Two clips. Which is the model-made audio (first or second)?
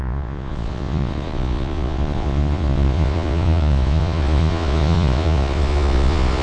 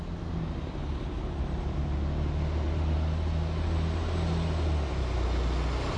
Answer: first